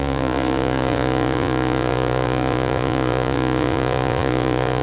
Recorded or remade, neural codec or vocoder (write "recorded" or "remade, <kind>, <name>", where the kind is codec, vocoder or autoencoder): remade, vocoder, Vocos